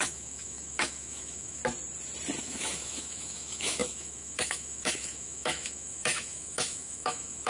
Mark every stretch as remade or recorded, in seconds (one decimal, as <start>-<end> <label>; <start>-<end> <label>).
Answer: 0.0-1.6 remade; 1.6-2.4 recorded; 2.4-7.5 remade

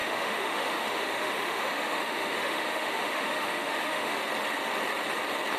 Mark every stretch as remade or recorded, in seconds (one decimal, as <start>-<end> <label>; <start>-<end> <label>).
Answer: 0.0-4.2 remade; 4.2-5.6 recorded

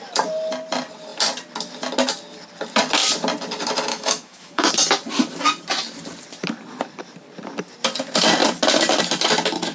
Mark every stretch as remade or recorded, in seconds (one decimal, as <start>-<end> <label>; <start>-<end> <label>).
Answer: 0.0-3.9 recorded; 3.9-4.7 remade; 4.7-9.7 recorded

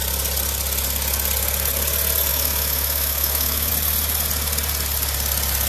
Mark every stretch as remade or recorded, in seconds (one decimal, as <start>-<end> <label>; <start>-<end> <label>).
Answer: 0.0-2.3 recorded; 2.3-3.7 remade; 3.7-5.7 recorded